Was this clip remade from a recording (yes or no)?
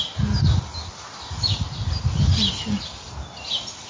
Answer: no